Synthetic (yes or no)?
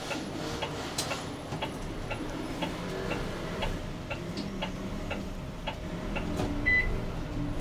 no